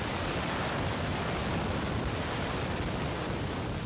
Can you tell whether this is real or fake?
real